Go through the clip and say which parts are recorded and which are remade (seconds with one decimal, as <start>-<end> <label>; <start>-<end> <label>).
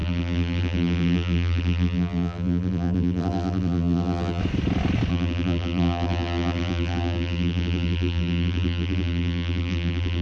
0.0-4.4 remade; 4.4-5.1 recorded; 5.1-10.2 remade